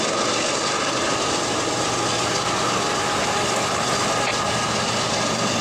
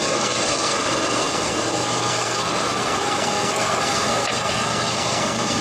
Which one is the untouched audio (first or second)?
first